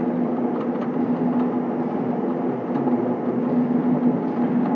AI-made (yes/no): no